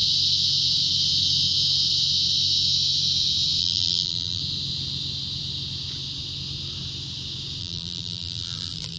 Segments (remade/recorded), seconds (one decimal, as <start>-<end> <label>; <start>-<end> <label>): 0.0-3.6 recorded; 3.6-4.4 remade; 4.4-7.6 recorded; 7.6-9.0 remade